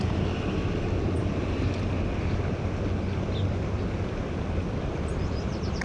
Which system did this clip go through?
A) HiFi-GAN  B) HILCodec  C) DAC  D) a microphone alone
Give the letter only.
D